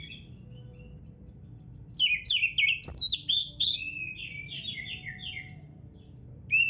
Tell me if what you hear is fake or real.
real